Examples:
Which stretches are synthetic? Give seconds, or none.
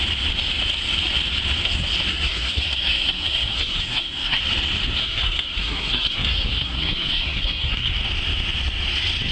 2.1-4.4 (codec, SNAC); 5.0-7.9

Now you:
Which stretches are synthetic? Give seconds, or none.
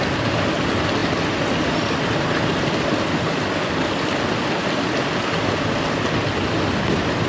none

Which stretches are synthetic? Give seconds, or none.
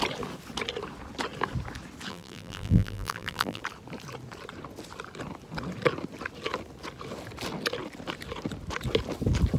2.1-3.6 (vocoder, BigVGAN v2)